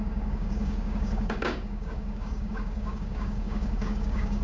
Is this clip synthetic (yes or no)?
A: yes